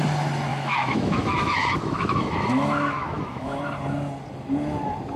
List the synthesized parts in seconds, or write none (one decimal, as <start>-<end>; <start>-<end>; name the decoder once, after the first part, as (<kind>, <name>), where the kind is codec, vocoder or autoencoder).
0.5-3.6 (autoencoder, DAC-VAE)